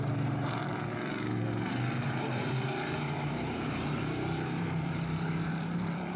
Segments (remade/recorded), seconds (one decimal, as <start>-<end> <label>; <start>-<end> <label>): 0.0-0.6 remade; 0.6-2.0 recorded; 2.0-6.2 remade